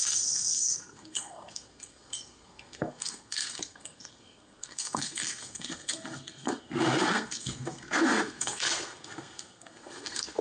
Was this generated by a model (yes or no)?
yes